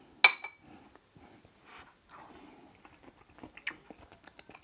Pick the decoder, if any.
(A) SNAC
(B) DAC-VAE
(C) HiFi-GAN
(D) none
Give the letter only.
D